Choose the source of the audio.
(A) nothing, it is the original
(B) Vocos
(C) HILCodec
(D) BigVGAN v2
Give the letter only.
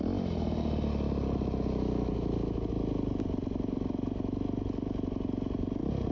A